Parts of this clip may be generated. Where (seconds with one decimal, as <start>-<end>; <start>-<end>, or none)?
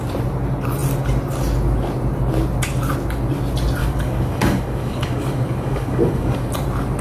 3.8-6.5